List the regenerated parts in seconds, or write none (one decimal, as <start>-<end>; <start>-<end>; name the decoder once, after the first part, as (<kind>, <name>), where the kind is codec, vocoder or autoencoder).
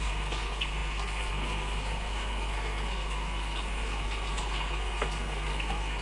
0.0-6.0 (codec, SNAC)